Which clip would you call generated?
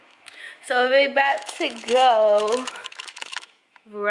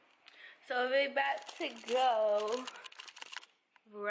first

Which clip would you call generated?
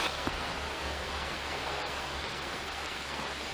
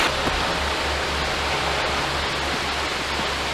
first